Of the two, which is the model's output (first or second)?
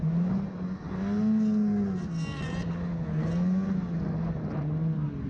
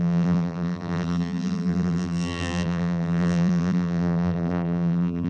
second